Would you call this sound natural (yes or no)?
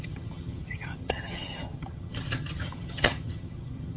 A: no